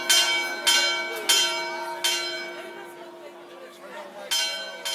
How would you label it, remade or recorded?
recorded